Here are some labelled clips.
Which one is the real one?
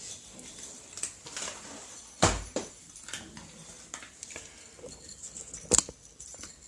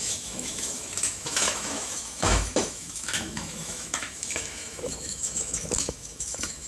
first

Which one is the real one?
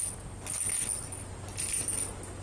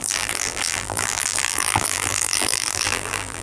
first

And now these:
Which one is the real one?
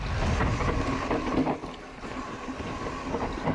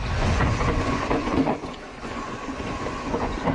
first